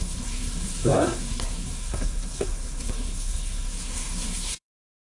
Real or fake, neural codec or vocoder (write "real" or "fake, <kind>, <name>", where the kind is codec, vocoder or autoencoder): fake, codec, SNAC